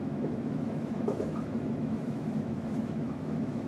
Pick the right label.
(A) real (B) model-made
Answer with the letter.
B